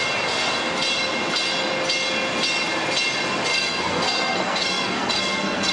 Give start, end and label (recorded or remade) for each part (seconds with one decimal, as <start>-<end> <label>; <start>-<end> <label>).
0.0-3.5 recorded; 3.5-5.7 remade